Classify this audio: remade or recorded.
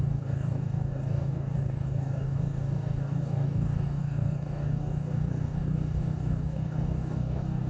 remade